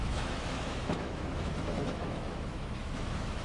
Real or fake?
fake